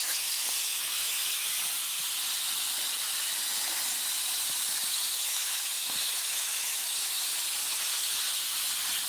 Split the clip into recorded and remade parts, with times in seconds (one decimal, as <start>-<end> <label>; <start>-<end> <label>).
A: 0.0-1.5 remade; 1.5-4.9 recorded; 4.9-8.4 remade; 8.4-9.1 recorded